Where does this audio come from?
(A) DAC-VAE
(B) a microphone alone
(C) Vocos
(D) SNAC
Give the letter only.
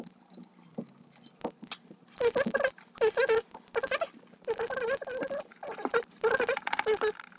B